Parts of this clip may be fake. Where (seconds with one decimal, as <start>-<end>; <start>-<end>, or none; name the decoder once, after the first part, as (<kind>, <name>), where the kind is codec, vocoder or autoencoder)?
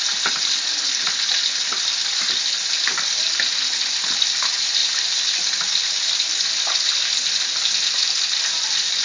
4.8-6.3 (vocoder, BigVGAN v2)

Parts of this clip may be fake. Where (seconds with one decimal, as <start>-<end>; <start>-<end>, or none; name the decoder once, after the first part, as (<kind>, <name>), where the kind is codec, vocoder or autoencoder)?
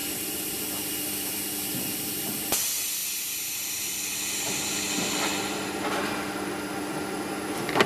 0.0-0.6 (vocoder, BigVGAN v2)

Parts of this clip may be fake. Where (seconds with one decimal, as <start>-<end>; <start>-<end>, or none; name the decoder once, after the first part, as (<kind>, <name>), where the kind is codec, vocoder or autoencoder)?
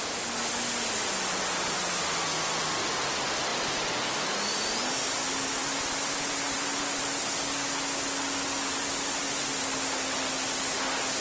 3.5-4.9 (vocoder, BigVGAN v2); 5.6-7.2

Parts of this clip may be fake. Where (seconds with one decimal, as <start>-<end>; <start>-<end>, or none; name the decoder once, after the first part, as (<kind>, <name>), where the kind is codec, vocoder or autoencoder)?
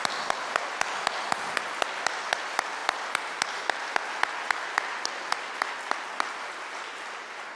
none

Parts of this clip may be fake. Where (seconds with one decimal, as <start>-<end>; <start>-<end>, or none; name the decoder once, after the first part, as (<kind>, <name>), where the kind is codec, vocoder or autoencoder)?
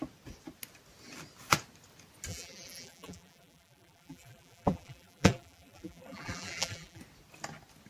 2.3-7.0 (vocoder, BigVGAN v2)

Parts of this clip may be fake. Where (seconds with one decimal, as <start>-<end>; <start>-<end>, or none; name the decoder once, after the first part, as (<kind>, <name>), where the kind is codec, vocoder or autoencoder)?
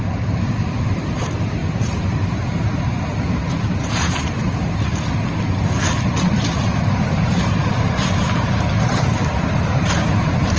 0.0-4.9 (vocoder, BigVGAN v2); 5.9-10.6